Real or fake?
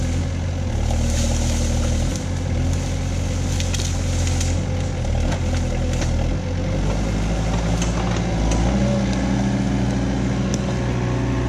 real